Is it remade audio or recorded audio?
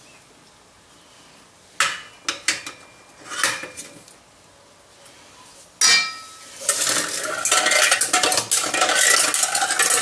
recorded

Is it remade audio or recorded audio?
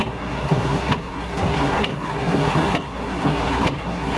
remade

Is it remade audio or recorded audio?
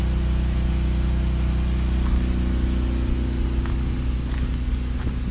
recorded